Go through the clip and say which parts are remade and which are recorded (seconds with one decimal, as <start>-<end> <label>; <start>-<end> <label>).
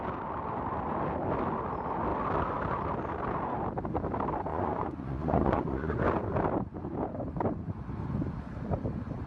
0.0-4.5 recorded; 4.5-6.0 remade; 6.0-9.3 recorded